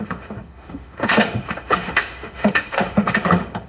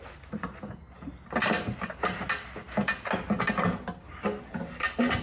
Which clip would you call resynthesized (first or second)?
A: first